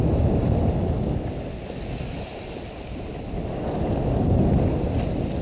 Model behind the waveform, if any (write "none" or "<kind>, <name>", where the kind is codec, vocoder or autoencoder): none